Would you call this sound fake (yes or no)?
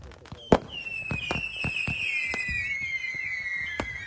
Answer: no